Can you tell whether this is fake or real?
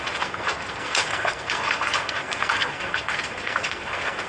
fake